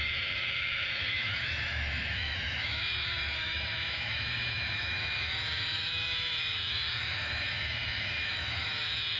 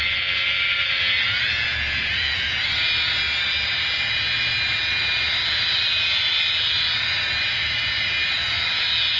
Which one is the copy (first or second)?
first